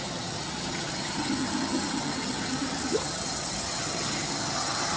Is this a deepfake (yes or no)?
yes